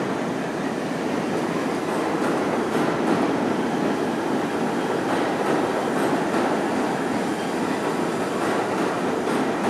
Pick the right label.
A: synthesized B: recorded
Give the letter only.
B